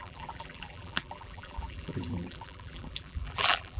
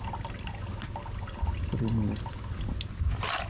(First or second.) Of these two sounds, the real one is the second